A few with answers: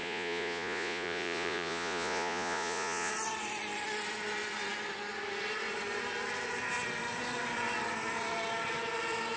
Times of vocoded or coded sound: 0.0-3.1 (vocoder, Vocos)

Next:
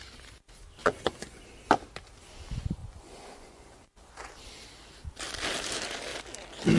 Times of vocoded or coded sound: 0.8-1.4 (vocoder, Vocos); 2.8-4.1

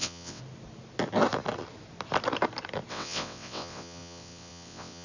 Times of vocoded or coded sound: 0.0-0.4 (vocoder, WaveNeXt); 2.9-5.0

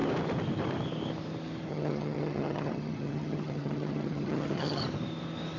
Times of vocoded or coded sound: 1.7-4.8 (vocoder, HiFi-GAN)

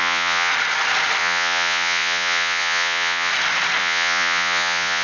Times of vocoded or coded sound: 0.0-0.5 (vocoder, Vocos); 1.2-3.3; 3.8-5.0

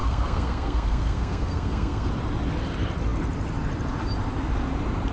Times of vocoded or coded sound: 0.0-2.1 (codec, SNAC)